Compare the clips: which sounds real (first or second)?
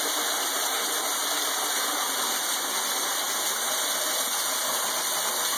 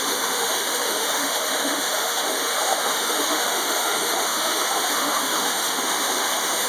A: first